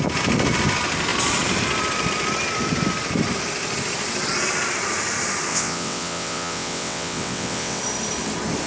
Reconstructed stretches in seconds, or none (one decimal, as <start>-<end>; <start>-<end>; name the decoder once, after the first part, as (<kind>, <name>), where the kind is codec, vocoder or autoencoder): 5.5-7.8 (vocoder, WaveNeXt)